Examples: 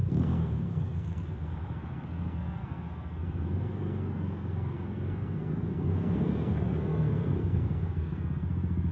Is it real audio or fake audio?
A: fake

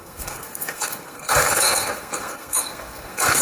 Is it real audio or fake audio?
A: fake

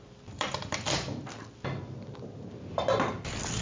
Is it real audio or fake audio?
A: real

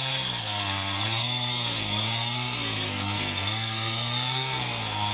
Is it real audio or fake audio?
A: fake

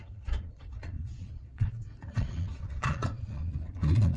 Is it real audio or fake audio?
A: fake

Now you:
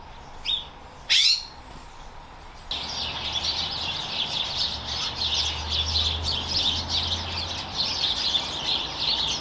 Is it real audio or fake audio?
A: real